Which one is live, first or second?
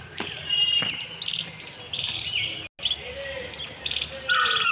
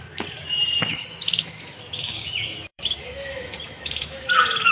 first